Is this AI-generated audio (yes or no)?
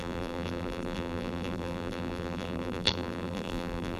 yes